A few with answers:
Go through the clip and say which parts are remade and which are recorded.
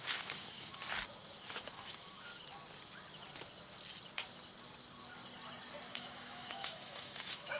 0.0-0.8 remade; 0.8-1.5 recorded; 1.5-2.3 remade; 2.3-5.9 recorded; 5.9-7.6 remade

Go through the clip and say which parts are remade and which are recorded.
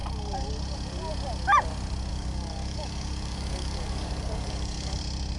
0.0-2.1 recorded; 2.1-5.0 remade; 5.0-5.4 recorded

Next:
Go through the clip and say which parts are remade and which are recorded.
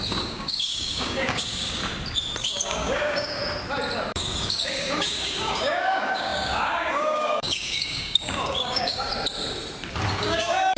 0.0-1.8 remade; 1.8-2.4 recorded; 2.4-3.4 remade; 3.4-4.1 recorded; 4.1-9.1 remade; 9.1-10.2 recorded; 10.2-10.8 remade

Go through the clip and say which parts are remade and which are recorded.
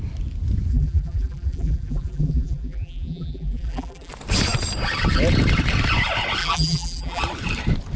0.0-0.7 recorded; 0.7-4.1 remade; 4.1-6.4 recorded; 6.4-7.2 remade; 7.2-8.0 recorded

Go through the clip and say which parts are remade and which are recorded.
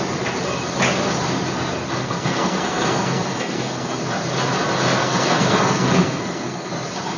0.0-2.0 recorded; 2.0-4.0 remade; 4.0-5.0 recorded; 5.0-6.7 remade; 6.7-7.2 recorded